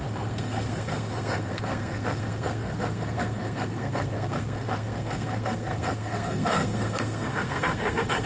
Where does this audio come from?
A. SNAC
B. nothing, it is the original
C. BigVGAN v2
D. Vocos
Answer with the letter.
A